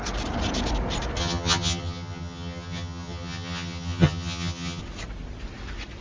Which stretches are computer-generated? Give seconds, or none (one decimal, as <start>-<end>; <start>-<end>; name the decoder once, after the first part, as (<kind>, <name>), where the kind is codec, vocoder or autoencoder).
1.2-4.8 (vocoder, HiFi-GAN)